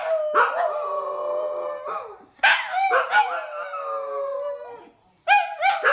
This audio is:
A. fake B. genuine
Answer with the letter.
B